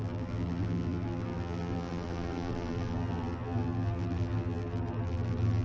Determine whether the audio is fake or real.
fake